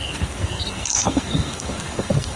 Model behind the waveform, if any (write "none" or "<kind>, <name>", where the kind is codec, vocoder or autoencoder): codec, SNAC